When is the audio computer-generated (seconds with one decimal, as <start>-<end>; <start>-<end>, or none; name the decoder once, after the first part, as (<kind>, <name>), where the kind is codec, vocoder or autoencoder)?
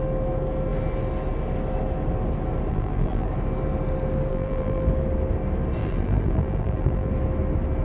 2.7-3.3 (vocoder, BigVGAN v2); 4.3-4.9; 5.8-7.1